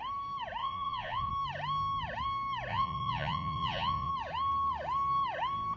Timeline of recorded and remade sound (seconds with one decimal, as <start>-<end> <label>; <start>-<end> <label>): 0.0-0.6 recorded; 0.6-1.3 remade; 1.3-2.7 recorded; 2.7-4.1 remade; 4.1-5.8 recorded